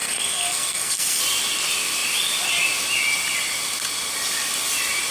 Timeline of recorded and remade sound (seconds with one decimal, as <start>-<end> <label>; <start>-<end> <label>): 0.0-1.2 remade; 1.2-5.1 recorded